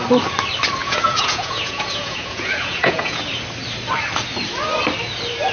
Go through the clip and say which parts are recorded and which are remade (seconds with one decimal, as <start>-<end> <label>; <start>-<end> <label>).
0.0-0.8 recorded; 0.8-3.2 remade; 3.2-5.5 recorded